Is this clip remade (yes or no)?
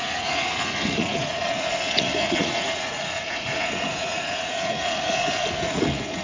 yes